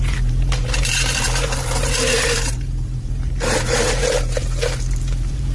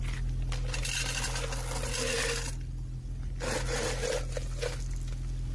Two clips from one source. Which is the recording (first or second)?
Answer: second